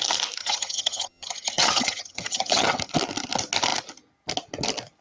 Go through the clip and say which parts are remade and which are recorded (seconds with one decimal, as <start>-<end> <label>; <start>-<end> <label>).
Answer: 0.0-0.4 recorded; 0.4-2.9 remade; 2.9-5.0 recorded